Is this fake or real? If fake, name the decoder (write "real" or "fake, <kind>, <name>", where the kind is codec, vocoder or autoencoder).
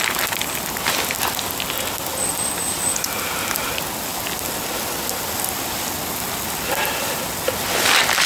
real